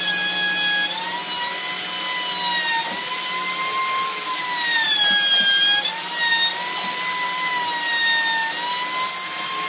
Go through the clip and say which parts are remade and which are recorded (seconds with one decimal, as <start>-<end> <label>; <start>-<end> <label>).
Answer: 0.0-9.7 recorded